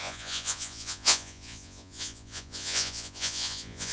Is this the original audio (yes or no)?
no